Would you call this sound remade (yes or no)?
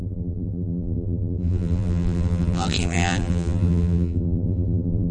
yes